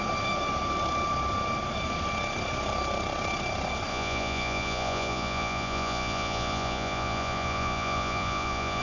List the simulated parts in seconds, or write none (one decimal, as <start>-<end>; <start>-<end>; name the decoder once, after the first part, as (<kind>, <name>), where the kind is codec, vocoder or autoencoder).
3.9-8.8 (vocoder, Vocos)